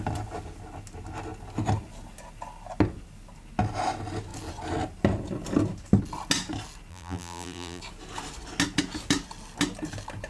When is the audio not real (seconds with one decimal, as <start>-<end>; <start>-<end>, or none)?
6.9-7.8